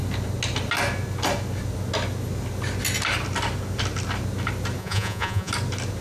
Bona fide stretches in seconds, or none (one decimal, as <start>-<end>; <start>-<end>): 0.0-4.8; 5.5-6.0